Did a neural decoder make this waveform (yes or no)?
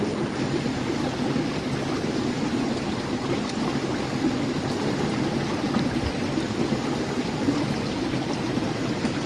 no